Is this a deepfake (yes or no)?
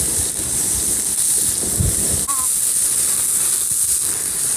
no